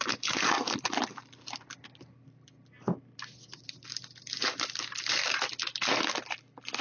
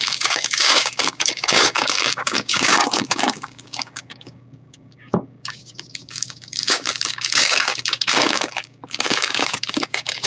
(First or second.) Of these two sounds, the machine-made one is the second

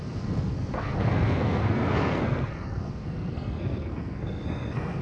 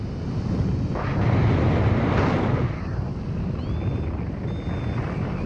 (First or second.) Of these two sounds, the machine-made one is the first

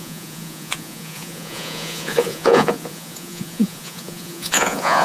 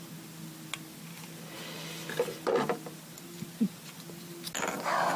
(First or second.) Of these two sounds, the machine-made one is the first